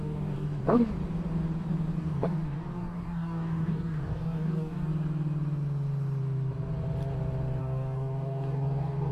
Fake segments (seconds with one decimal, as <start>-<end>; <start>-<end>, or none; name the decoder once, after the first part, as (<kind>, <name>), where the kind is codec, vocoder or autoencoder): 0.0-0.6 (codec, DAC); 2.0-4.9; 7.6-9.1